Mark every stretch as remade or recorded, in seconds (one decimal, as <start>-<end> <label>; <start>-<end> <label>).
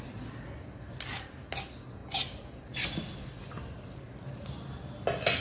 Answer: 0.0-5.4 recorded